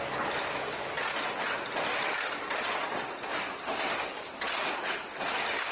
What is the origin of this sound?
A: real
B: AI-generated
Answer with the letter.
A